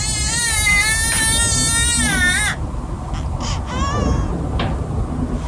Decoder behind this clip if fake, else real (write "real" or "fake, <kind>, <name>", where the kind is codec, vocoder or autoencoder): real